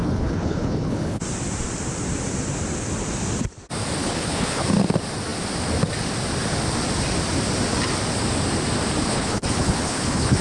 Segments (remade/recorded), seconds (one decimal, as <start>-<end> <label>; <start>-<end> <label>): 0.0-1.2 remade; 1.2-4.0 recorded; 4.0-4.6 remade; 4.6-9.1 recorded; 9.1-10.4 remade